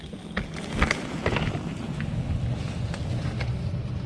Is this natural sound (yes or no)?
yes